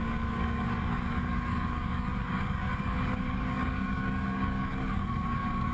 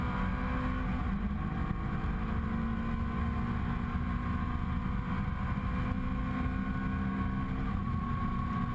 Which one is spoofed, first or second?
first